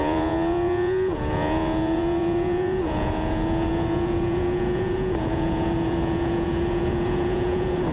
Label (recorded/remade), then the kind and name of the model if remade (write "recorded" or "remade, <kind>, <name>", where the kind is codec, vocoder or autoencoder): remade, vocoder, Vocos